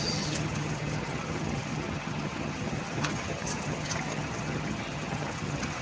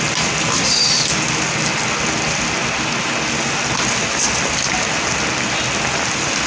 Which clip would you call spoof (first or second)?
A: first